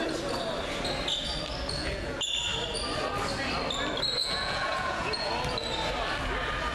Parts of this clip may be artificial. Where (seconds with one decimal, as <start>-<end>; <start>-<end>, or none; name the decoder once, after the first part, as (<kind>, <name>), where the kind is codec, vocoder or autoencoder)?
1.8-2.3 (vocoder, Vocos); 4.2-5.3